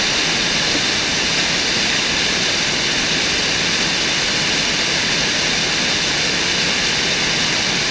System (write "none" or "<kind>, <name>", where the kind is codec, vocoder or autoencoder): none